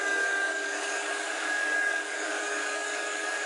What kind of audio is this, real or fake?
fake